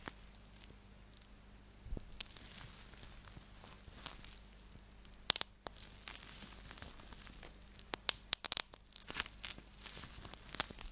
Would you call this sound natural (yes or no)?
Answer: yes